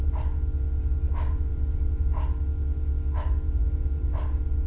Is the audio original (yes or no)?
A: yes